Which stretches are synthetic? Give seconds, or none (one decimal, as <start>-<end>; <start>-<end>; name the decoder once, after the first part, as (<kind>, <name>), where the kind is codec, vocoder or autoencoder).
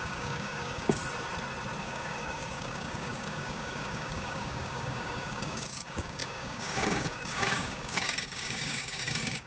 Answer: 0.0-1.0 (codec, DAC); 1.8-9.5